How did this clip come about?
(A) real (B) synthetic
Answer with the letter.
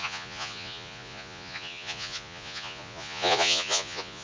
B